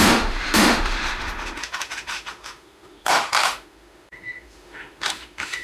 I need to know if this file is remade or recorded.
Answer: remade